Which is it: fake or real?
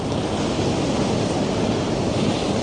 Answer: real